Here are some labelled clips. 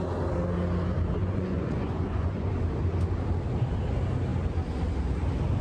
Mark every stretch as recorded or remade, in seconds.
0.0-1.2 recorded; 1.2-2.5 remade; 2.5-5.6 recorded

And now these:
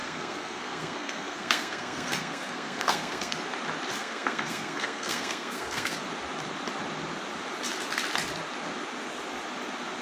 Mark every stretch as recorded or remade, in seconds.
0.0-3.4 remade; 3.4-4.0 recorded; 4.0-6.0 remade; 6.0-10.0 recorded